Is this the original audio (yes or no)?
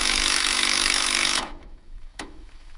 no